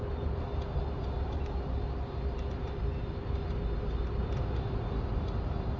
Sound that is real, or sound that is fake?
real